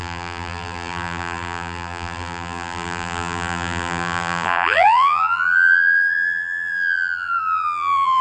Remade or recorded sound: remade